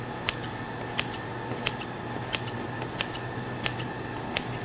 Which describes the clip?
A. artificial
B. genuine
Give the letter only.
B